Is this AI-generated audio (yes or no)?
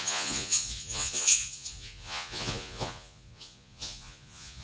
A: yes